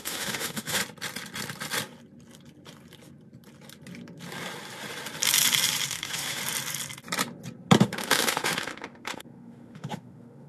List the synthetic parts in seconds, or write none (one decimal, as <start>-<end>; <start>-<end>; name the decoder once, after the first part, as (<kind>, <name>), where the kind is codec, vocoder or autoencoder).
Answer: 0.0-0.8 (autoencoder, DAC-VAE); 5.9-6.4; 7.8-10.5

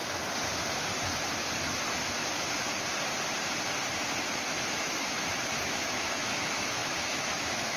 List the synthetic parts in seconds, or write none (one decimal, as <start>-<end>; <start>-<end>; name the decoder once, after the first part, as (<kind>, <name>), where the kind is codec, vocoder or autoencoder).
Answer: 4.7-7.8 (autoencoder, DAC-VAE)

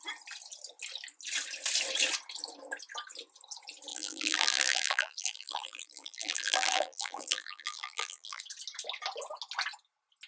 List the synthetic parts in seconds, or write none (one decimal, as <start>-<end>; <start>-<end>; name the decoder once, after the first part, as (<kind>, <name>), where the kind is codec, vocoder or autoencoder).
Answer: 3.9-8.4 (vocoder, BigVGAN v2)

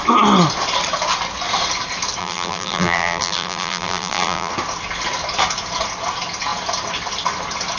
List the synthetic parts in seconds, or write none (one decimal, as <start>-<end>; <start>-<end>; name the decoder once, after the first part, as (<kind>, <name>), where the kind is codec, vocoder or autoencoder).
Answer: 2.2-4.5 (vocoder, BigVGAN v2)

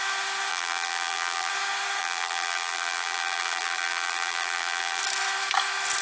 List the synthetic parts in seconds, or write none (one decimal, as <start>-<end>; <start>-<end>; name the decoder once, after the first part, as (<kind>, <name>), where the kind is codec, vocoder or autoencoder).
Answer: 0.5-1.5 (vocoder, BigVGAN v2); 2.0-5.0